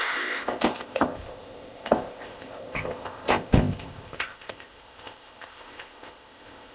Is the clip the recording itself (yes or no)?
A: no